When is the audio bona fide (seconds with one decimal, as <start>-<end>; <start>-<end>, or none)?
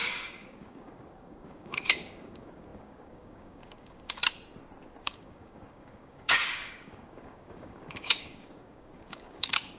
4.2-5.0